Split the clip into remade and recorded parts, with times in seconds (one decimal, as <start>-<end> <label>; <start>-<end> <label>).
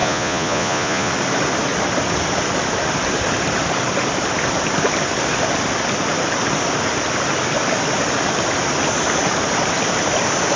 0.0-1.1 remade; 1.1-10.6 recorded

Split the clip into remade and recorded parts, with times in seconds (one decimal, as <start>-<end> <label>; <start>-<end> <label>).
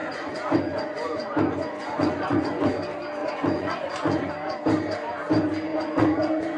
0.0-2.7 remade; 2.7-3.2 recorded; 3.2-4.3 remade; 4.3-5.7 recorded; 5.7-6.6 remade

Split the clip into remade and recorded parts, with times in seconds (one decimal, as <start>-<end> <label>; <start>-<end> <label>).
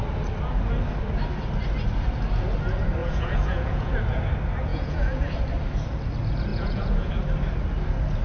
0.0-3.0 recorded; 3.0-3.9 remade; 3.9-4.7 recorded; 4.7-5.3 remade; 5.3-6.5 recorded; 6.5-7.1 remade; 7.1-8.2 recorded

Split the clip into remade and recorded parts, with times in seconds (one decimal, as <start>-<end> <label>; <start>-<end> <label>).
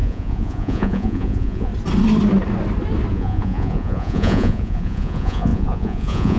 0.0-1.7 remade; 1.7-3.1 recorded; 3.1-6.4 remade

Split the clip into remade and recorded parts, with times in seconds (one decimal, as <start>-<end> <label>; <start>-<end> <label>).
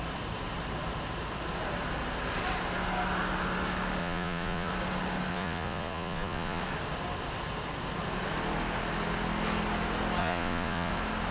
0.0-4.0 recorded; 4.0-4.7 remade; 4.7-5.3 recorded; 5.3-6.6 remade; 6.6-10.2 recorded; 10.2-10.9 remade; 10.9-11.3 recorded